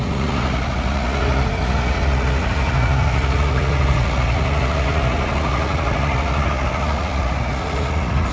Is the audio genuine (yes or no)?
no